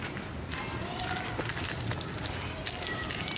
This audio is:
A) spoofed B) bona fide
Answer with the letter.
B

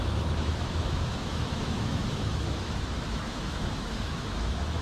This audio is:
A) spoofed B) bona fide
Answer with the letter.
A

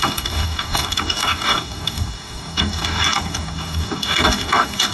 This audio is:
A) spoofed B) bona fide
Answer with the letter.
A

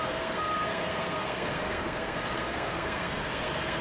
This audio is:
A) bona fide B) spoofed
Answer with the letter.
B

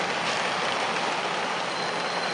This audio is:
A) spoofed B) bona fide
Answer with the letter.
B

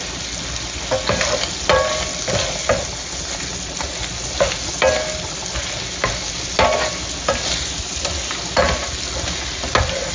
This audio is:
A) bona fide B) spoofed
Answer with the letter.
A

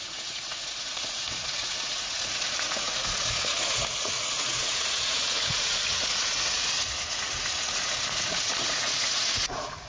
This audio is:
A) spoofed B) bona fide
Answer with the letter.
A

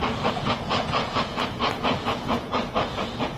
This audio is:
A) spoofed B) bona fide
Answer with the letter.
A